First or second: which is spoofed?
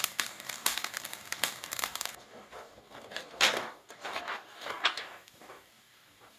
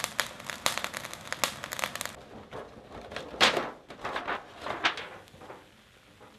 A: first